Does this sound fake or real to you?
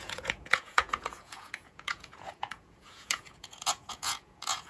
fake